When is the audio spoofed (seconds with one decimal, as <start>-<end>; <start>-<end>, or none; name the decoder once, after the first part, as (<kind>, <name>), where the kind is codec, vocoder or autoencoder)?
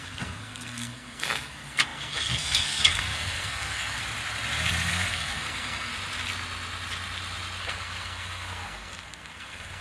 0.0-4.0 (codec, SNAC); 4.9-5.9; 7.6-9.8